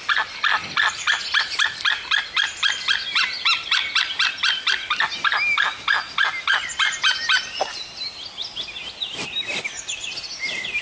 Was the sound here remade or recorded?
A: recorded